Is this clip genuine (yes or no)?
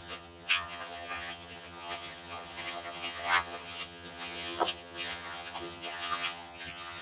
no